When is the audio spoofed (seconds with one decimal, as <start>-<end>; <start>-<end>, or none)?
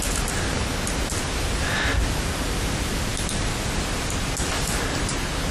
3.1-3.9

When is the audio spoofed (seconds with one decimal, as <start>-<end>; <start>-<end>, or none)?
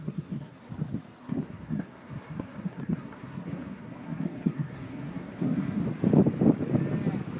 0.0-0.7; 1.2-5.8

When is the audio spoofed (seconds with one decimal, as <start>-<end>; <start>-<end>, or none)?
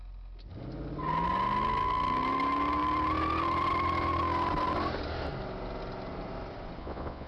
6.8-7.3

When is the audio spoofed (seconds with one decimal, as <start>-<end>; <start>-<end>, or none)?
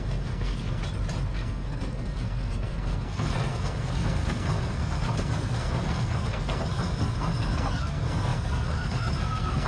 0.0-0.8; 1.3-9.7